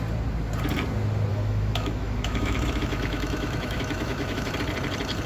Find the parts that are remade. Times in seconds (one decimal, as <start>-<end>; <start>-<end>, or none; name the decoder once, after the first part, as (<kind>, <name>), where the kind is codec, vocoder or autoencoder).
1.3-4.5 (autoencoder, DAC-VAE)